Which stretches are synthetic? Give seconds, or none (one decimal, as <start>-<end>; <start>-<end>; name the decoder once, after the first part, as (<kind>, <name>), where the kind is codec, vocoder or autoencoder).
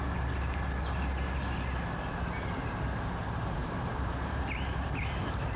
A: 3.6-5.0 (vocoder, BigVGAN v2)